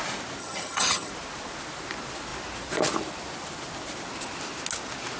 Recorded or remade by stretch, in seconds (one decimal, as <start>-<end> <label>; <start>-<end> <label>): 0.0-0.4 recorded; 0.4-1.1 remade; 1.1-5.2 recorded